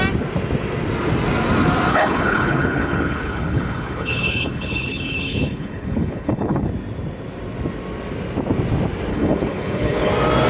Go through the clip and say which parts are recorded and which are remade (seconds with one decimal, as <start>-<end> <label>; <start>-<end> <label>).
0.0-1.9 recorded; 1.9-6.7 remade; 6.7-9.1 recorded; 9.1-10.1 remade; 10.1-10.5 recorded